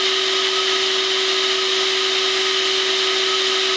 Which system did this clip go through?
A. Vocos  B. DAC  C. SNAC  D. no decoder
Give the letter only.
D